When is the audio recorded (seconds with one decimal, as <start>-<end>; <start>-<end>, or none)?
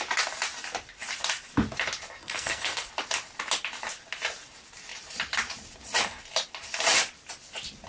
0.0-2.2; 2.9-7.9